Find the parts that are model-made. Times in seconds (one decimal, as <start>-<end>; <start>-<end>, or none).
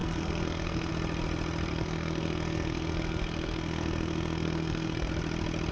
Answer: 0.0-0.9; 1.7-5.1